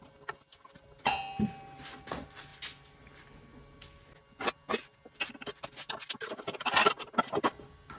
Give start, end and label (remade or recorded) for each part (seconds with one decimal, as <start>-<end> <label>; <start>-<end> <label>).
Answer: 0.0-8.0 recorded